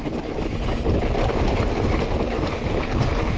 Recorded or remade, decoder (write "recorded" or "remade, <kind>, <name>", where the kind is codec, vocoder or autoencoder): recorded